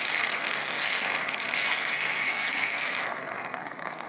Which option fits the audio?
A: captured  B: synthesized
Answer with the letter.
B